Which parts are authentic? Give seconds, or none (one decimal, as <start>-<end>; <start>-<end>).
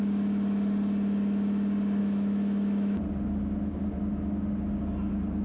0.0-2.0; 3.0-5.4